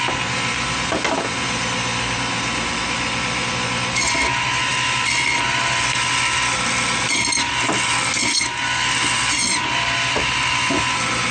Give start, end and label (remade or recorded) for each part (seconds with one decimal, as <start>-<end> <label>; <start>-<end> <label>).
0.0-11.3 recorded